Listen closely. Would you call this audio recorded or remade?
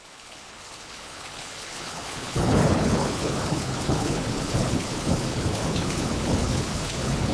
remade